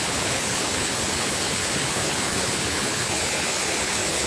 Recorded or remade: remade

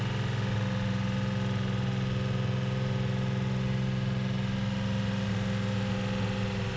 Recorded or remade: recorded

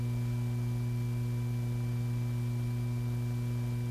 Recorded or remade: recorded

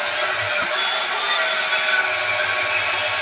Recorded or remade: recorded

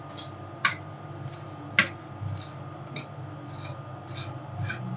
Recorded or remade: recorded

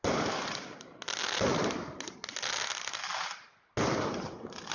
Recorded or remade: recorded